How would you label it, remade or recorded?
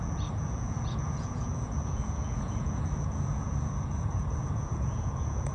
remade